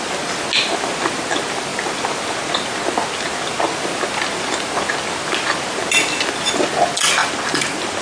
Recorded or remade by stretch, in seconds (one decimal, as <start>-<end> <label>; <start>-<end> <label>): 0.0-8.0 recorded